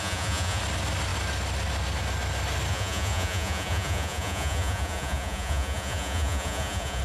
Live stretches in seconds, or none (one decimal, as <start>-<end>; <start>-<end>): 0.6-2.7